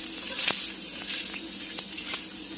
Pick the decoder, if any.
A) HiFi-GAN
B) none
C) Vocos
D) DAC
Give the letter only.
B